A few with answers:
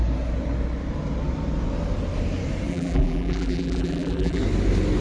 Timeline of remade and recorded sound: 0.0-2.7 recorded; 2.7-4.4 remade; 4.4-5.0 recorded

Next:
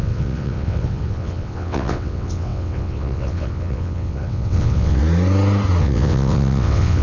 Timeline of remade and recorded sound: 0.0-5.0 remade; 5.0-5.8 recorded; 5.8-7.0 remade

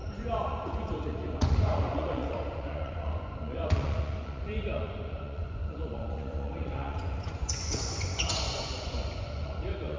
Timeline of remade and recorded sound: 0.0-10.0 remade

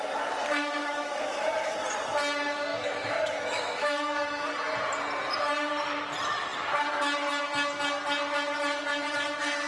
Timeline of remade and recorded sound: 0.0-0.8 recorded; 0.8-1.7 remade; 1.7-2.7 recorded; 2.7-4.5 remade; 4.5-9.7 recorded

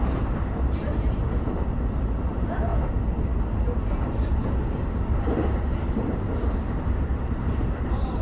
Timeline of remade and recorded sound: 0.0-2.7 remade; 2.7-3.4 recorded; 3.4-8.2 remade